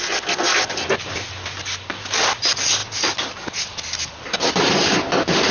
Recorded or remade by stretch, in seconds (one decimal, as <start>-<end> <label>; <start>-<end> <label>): 0.0-5.5 recorded